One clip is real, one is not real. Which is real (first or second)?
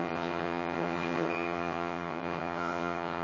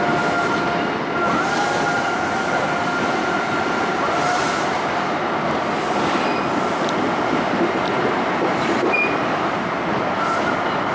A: second